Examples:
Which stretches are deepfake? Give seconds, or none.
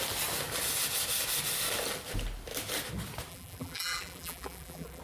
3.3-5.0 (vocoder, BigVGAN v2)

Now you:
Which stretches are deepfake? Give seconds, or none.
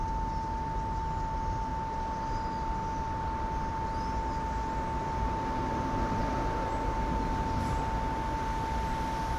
none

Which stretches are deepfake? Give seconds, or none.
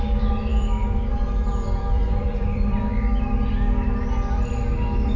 0.5-2.8 (vocoder, BigVGAN v2)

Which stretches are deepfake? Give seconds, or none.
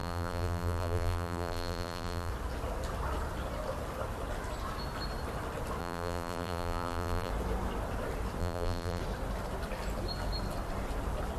0.0-2.3 (vocoder, BigVGAN v2); 5.8-7.3; 8.4-9.0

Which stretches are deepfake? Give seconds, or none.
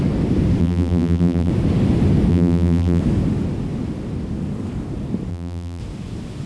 0.6-1.5 (vocoder, BigVGAN v2); 2.3-3.0; 5.3-5.8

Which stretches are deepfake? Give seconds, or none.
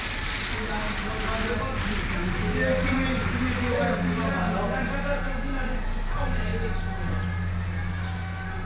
none